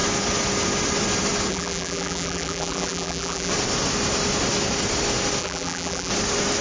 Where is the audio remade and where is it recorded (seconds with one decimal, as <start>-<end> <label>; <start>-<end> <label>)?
0.0-1.5 recorded; 1.5-3.5 remade; 3.5-5.4 recorded; 5.4-6.1 remade; 6.1-6.6 recorded